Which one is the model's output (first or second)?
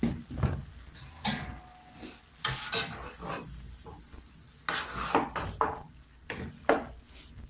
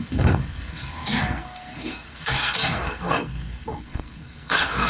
second